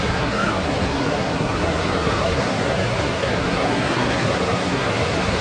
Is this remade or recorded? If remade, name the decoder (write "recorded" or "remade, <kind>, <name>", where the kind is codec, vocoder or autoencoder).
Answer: remade, codec, SNAC